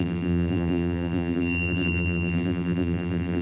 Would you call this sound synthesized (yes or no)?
yes